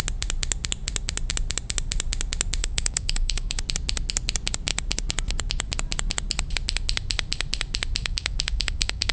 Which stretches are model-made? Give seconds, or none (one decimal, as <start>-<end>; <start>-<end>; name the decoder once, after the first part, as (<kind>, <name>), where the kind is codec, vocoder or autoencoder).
2.6-3.6 (codec, DAC); 8.0-9.1